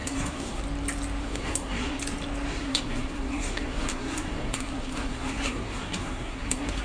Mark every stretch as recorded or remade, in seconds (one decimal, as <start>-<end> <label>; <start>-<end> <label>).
0.0-0.6 remade; 0.6-1.2 recorded; 1.2-2.0 remade; 2.0-2.5 recorded; 2.5-6.8 remade